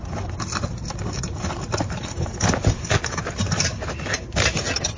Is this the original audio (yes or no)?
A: yes